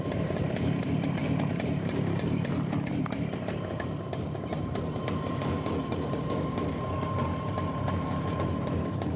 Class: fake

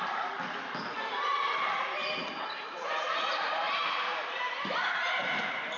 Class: fake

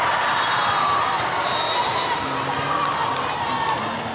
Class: real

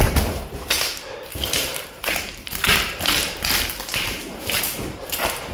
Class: fake